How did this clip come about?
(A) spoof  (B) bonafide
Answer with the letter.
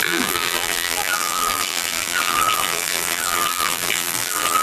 A